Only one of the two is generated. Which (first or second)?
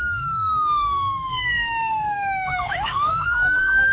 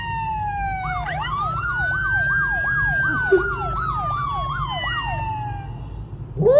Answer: first